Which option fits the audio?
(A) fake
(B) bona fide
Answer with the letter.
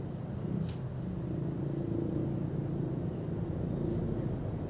B